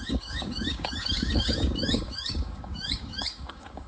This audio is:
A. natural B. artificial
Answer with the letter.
B